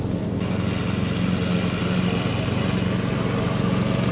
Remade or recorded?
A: recorded